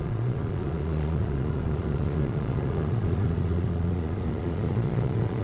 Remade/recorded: remade